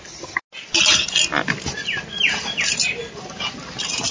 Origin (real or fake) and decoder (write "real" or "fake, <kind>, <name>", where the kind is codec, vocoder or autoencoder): real